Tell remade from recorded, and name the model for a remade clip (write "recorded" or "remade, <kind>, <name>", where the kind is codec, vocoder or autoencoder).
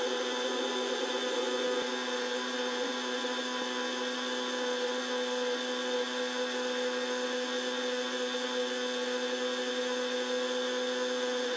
recorded